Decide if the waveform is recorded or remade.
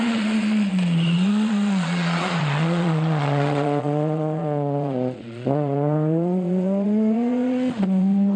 remade